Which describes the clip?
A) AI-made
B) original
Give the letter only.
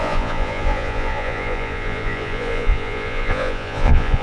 A